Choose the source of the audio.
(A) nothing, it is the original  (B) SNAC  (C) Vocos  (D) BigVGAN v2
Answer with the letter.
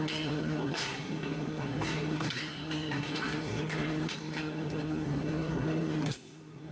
B